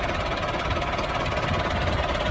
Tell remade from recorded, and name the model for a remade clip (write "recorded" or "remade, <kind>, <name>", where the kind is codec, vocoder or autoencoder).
remade, vocoder, BigVGAN v2